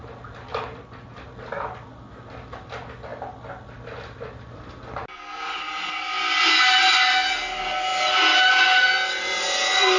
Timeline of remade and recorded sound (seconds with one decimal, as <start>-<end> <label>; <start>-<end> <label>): 0.0-10.0 recorded